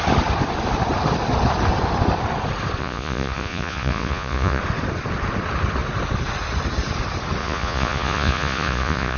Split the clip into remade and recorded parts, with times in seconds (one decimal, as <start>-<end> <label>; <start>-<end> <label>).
0.0-2.8 recorded; 2.8-4.6 remade; 4.6-7.4 recorded; 7.4-9.2 remade